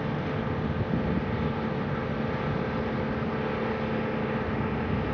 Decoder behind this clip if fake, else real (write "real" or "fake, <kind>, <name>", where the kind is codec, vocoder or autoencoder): real